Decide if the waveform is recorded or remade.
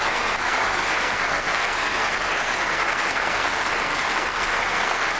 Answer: remade